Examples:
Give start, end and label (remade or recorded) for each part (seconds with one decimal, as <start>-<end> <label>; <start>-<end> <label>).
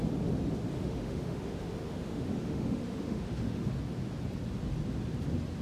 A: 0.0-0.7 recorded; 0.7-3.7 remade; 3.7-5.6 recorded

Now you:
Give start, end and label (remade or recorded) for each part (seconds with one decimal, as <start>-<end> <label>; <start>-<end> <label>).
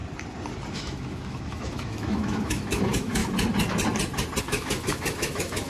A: 0.0-0.7 recorded; 0.7-3.2 remade; 3.2-4.4 recorded; 4.4-5.7 remade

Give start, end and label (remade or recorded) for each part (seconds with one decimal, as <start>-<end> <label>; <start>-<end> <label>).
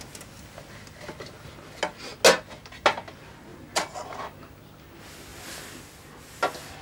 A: 0.0-6.8 recorded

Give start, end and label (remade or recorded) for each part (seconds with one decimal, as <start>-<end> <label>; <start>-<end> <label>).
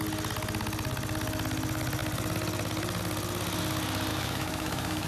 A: 0.0-4.1 recorded; 4.1-5.1 remade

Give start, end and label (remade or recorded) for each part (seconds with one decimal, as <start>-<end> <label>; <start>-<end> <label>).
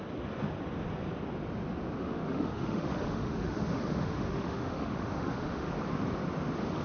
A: 0.0-2.0 recorded; 2.0-5.7 remade; 5.7-6.8 recorded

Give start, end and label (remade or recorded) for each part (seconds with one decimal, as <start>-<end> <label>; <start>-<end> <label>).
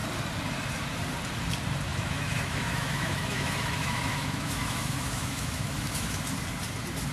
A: 0.0-1.9 recorded; 1.9-6.2 remade; 6.2-7.1 recorded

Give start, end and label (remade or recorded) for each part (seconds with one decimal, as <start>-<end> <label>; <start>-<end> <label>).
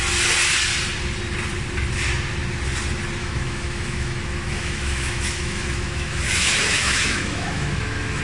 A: 0.0-3.2 recorded; 3.2-8.2 remade